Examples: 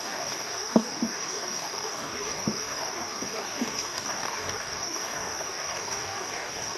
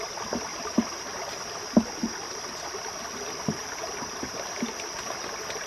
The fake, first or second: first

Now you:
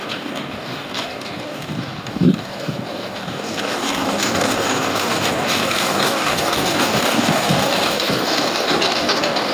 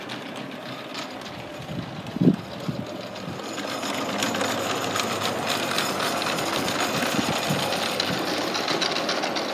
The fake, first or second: first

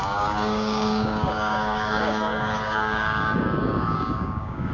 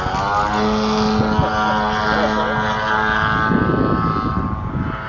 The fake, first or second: first